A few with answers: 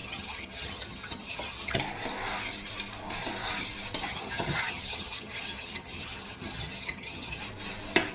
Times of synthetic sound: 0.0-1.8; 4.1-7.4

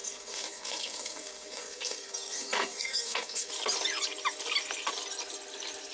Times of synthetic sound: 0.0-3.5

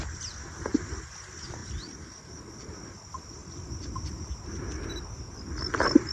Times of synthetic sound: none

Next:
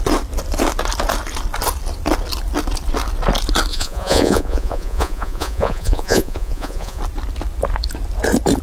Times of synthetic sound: 3.7-7.0

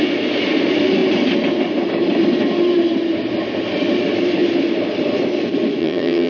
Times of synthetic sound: 5.8-6.3

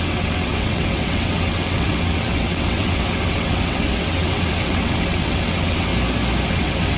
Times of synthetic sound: 0.0-5.9; 6.5-7.0

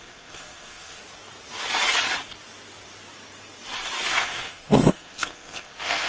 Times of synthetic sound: 0.0-1.0; 4.1-6.1

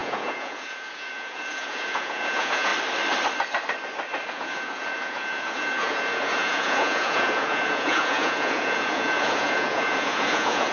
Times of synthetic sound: 0.0-2.7; 4.3-10.7